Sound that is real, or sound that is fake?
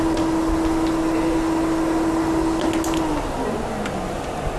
real